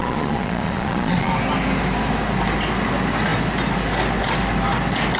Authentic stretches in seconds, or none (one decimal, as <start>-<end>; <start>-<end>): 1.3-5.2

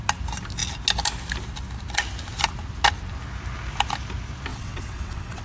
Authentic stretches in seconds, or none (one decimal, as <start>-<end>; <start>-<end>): 0.0-4.5

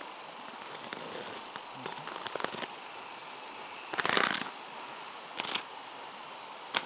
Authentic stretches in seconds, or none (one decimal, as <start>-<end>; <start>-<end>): 0.0-6.9

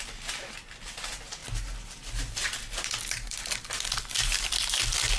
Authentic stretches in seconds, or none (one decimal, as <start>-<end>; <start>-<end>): 0.0-1.4; 4.5-5.2

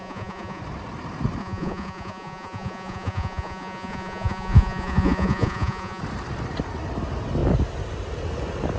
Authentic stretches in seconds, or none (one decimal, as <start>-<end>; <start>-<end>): 0.6-1.4; 6.0-8.8

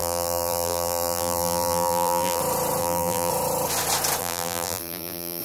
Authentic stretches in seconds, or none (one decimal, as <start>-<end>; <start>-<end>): 2.4-2.8; 3.3-4.2

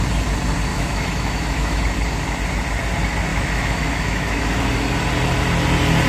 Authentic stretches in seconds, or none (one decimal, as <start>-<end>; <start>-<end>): 0.0-0.7; 1.8-3.3; 4.6-6.1